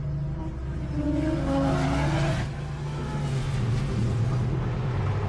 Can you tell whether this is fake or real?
real